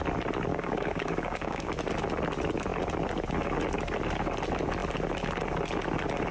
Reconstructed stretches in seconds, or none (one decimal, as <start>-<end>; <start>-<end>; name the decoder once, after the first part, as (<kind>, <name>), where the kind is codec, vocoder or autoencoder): 0.5-1.7 (codec, DAC)